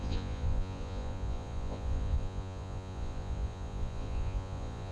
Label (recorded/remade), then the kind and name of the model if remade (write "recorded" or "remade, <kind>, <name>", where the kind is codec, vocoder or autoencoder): remade, vocoder, Vocos